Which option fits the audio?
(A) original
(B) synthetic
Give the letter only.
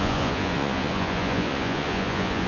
B